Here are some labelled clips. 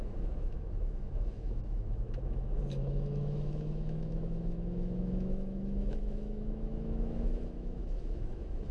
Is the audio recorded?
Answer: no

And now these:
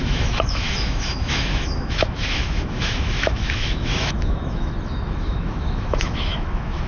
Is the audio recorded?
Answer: no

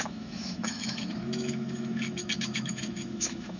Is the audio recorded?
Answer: no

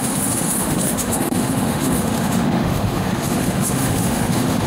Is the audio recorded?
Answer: no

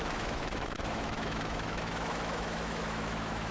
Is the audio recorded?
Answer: no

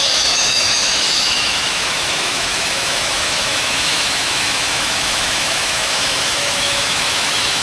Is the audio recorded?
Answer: no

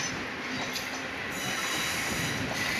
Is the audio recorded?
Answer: yes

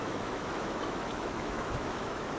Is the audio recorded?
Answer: no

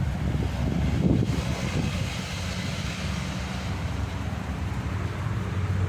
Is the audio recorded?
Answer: yes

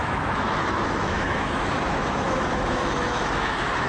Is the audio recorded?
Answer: no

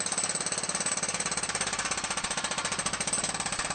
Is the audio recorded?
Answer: yes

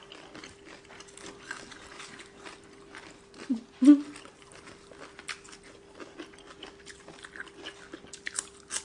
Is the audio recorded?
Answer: yes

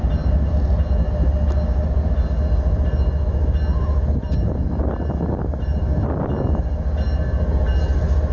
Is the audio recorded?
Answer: yes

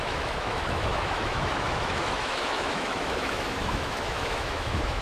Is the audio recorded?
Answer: no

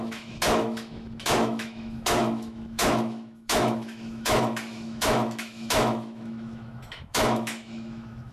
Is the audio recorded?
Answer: no